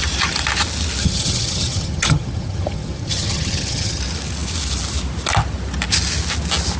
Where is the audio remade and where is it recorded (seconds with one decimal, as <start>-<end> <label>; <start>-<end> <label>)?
0.0-1.0 recorded; 1.0-4.0 remade; 4.0-6.8 recorded